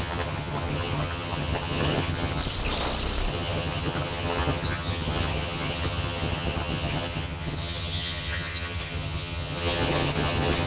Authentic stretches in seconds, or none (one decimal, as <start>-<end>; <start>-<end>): 2.4-3.3